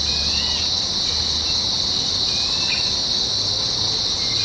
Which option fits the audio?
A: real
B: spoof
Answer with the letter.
A